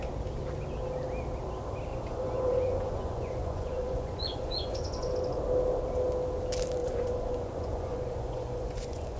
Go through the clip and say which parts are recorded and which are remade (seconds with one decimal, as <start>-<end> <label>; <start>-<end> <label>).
0.0-1.9 recorded; 1.9-5.1 remade; 5.1-6.8 recorded; 6.8-9.2 remade